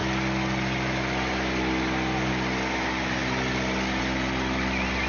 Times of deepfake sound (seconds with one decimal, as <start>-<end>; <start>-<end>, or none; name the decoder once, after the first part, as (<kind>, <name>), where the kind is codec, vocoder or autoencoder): none